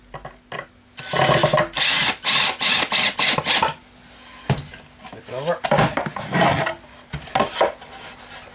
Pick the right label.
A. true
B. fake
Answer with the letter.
A